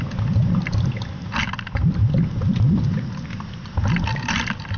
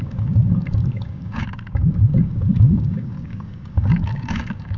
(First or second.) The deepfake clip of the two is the second